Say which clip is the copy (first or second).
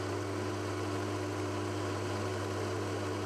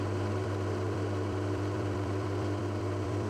second